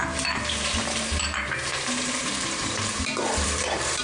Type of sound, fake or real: fake